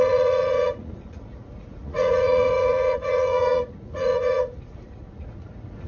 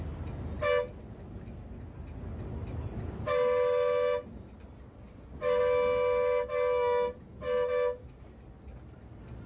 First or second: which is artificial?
first